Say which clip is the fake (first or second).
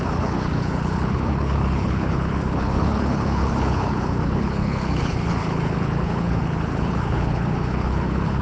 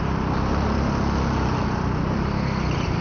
first